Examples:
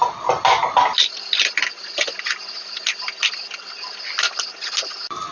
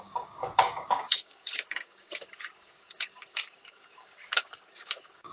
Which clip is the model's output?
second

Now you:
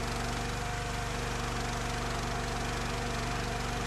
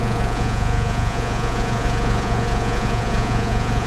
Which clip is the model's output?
second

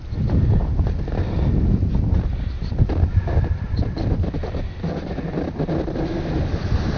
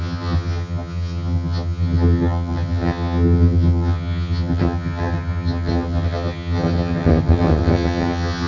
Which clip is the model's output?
second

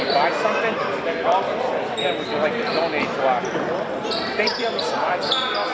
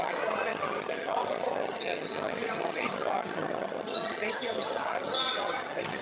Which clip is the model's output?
second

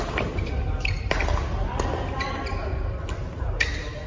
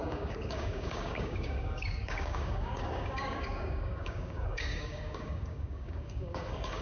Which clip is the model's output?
second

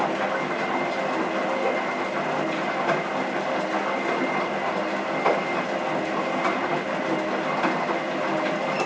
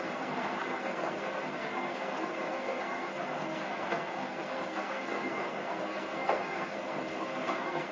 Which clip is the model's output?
second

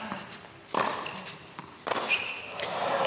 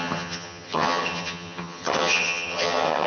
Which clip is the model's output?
second